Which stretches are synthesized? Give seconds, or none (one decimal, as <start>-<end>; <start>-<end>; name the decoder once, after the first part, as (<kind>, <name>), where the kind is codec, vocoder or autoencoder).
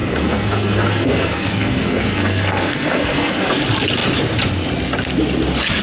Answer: 0.0-3.5 (codec, SNAC)